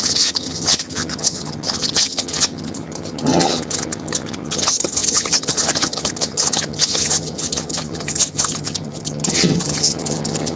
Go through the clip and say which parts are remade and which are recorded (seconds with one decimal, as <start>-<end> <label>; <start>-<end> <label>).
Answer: 0.0-10.6 remade